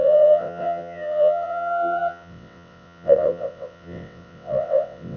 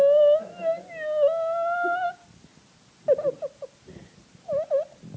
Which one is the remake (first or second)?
first